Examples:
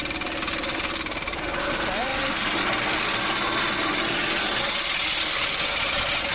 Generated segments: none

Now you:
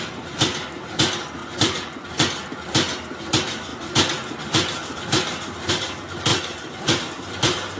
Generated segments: 1.4-2.3 (vocoder, Vocos); 6.3-7.0